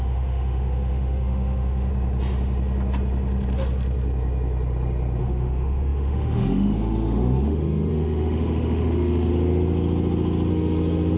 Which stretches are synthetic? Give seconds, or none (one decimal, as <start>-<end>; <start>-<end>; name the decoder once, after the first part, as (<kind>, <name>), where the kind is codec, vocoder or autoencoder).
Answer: 0.0-1.9 (autoencoder, DAC-VAE); 5.2-9.3; 10.5-11.2